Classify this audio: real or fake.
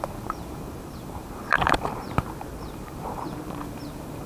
fake